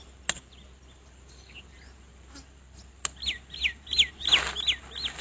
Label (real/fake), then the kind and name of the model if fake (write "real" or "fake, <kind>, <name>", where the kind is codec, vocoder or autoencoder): real